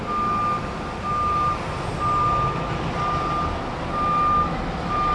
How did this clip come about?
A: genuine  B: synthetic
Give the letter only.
A